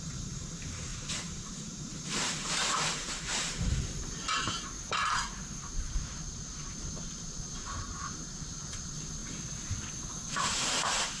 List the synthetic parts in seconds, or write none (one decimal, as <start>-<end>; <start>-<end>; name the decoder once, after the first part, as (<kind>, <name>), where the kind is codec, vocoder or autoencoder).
0.0-9.2 (vocoder, BigVGAN v2); 10.1-11.2